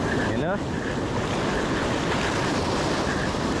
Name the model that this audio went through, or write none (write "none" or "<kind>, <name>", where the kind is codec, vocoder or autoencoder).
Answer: none